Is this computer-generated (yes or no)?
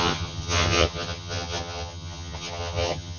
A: yes